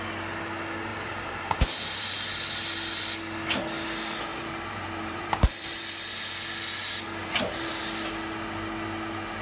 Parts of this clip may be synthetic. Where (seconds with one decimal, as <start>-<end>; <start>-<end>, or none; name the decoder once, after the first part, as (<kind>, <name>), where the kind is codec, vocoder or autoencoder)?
0.9-2.3 (vocoder, BigVGAN v2); 4.3-5.7; 7.2-7.7